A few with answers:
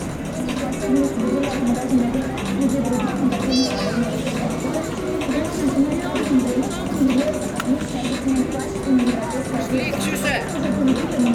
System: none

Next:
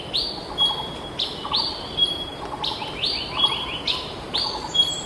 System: vocoder, BigVGAN v2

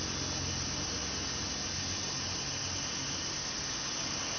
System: none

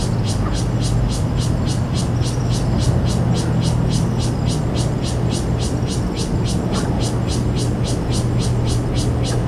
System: none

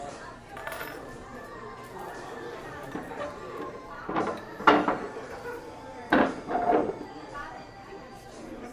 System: vocoder, BigVGAN v2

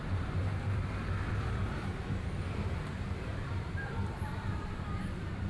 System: vocoder, BigVGAN v2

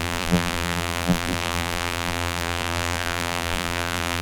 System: vocoder, BigVGAN v2